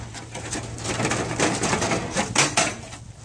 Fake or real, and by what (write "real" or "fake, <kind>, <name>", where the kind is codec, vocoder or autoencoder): real